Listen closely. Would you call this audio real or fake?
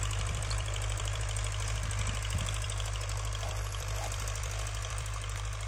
fake